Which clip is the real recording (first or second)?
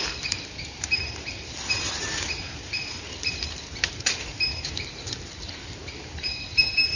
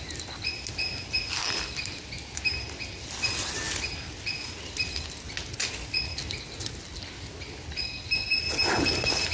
second